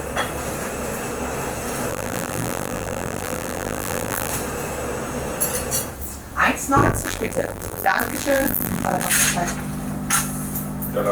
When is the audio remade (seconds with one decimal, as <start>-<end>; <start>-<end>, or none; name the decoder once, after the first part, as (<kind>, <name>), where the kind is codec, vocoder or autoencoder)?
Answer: 1.9-4.3 (vocoder, BigVGAN v2); 6.8-9.1